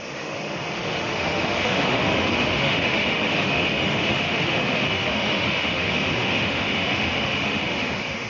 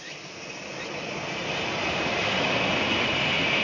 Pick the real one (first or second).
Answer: second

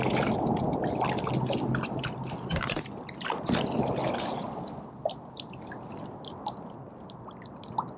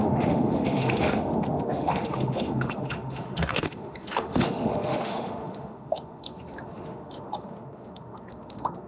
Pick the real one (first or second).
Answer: first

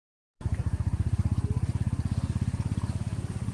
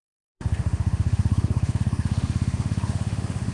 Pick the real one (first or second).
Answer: first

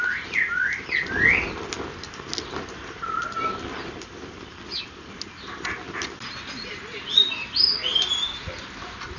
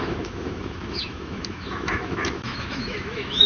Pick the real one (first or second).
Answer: first